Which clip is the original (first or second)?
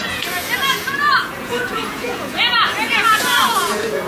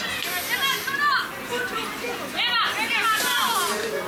second